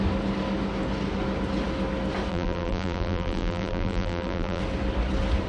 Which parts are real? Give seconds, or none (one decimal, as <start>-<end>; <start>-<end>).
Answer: 0.0-2.3; 4.6-5.5

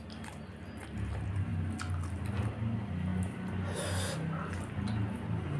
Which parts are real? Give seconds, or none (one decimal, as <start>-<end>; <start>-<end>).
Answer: 0.0-5.6